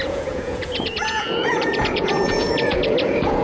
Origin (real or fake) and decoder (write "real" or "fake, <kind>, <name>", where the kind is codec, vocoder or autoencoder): fake, vocoder, Vocos